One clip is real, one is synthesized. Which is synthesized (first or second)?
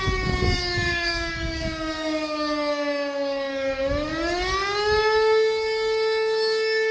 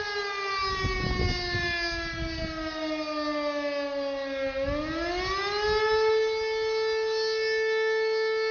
first